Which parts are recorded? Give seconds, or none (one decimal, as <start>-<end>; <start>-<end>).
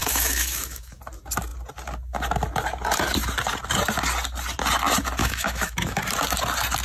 1.0-5.2; 6.0-6.8